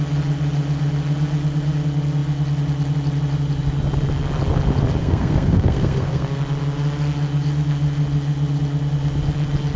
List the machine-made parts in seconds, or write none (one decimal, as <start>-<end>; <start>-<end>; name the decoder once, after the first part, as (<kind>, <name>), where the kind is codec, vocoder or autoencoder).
5.0-6.4 (codec, SNAC)